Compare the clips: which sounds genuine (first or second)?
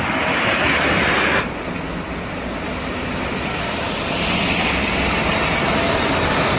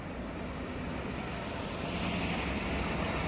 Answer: second